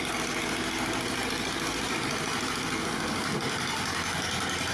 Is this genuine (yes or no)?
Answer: yes